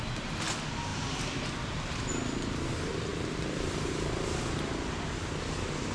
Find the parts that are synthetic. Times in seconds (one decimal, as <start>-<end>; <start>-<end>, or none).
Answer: 0.9-2.0; 3.1-3.9